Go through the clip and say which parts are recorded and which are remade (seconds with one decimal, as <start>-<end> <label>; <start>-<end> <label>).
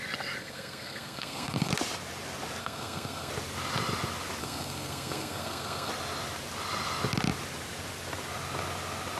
0.0-0.4 recorded; 0.4-1.7 remade; 1.7-2.6 recorded; 2.6-3.3 remade; 3.3-4.4 recorded; 4.4-5.9 remade; 5.9-9.2 recorded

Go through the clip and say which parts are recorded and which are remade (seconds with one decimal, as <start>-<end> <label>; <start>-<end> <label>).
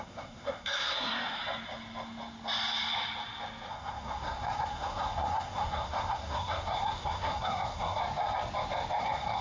0.0-1.4 remade; 1.4-3.7 recorded; 3.7-8.0 remade; 8.0-9.0 recorded; 9.0-9.4 remade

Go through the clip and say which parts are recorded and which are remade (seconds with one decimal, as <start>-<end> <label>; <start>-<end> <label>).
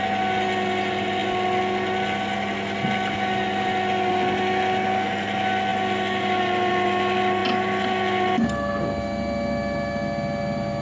0.0-10.8 recorded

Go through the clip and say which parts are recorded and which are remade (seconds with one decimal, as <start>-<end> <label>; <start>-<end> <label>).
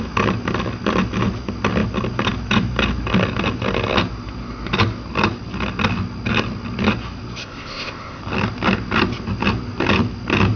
0.0-7.4 recorded; 7.4-8.2 remade; 8.2-10.6 recorded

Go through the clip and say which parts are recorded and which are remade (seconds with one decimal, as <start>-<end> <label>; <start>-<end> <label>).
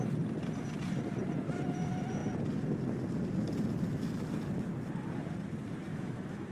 0.0-5.9 recorded; 5.9-6.5 remade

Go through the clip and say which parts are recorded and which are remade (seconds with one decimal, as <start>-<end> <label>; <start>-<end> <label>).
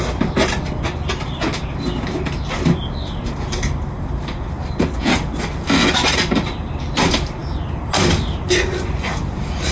0.0-9.7 recorded